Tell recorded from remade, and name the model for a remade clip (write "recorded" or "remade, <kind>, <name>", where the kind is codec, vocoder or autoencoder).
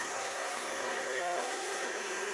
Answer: remade, codec, SNAC